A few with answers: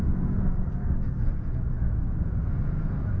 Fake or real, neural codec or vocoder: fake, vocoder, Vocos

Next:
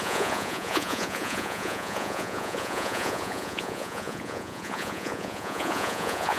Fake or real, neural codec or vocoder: fake, vocoder, Vocos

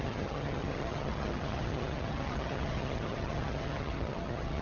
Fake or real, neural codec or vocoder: fake, vocoder, HiFi-GAN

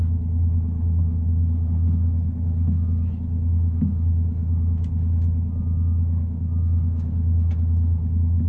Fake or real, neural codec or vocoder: real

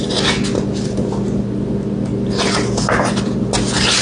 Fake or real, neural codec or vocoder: real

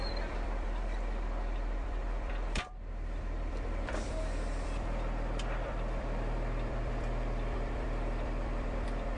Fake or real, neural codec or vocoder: fake, vocoder, BigVGAN v2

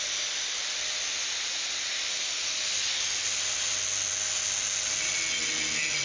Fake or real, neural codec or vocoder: real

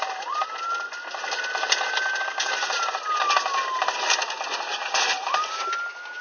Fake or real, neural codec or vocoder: real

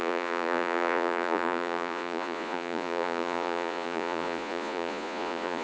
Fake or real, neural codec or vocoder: fake, vocoder, Vocos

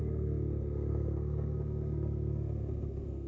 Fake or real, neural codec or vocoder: fake, codec, SNAC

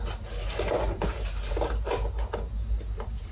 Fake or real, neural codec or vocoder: real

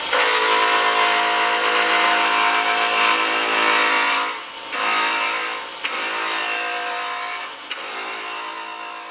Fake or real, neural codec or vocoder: real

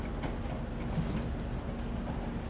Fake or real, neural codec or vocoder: real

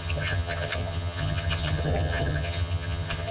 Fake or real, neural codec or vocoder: fake, vocoder, HiFi-GAN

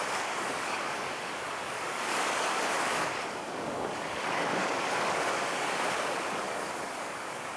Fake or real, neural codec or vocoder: fake, codec, DAC